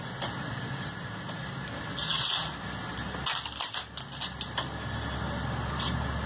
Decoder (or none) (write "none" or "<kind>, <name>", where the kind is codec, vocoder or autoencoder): none